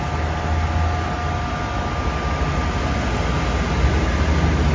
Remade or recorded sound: recorded